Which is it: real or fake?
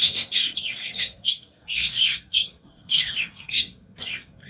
fake